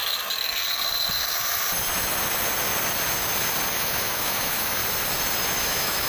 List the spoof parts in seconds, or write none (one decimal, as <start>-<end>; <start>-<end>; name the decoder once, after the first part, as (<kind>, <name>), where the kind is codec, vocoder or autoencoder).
3.7-4.8 (autoencoder, DAC-VAE); 5.6-6.1